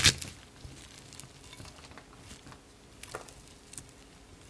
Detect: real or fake real